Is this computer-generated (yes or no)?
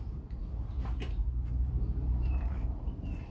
yes